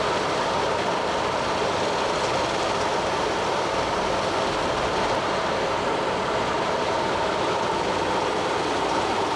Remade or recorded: recorded